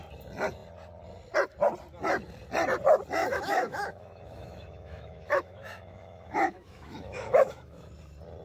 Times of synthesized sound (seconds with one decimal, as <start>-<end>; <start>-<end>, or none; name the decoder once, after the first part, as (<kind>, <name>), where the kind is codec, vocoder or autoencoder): 3.2-7.9 (autoencoder, DAC-VAE)